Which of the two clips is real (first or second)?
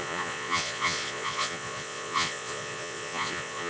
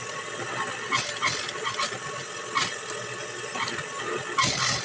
second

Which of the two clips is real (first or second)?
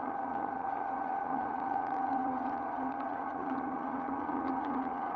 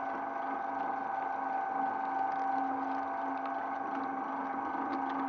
second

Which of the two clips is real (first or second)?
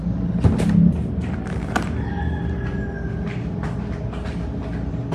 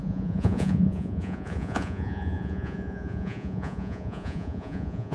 first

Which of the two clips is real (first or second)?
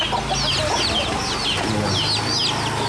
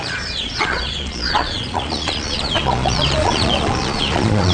first